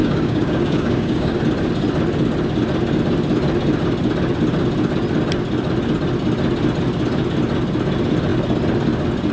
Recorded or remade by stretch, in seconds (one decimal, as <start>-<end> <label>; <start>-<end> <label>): 0.0-1.4 remade; 1.4-9.3 recorded